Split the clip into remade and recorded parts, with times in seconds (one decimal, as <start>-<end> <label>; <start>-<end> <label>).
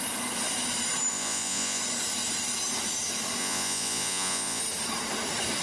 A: 0.0-1.1 recorded; 1.1-1.8 remade; 1.8-3.4 recorded; 3.4-4.6 remade; 4.6-5.6 recorded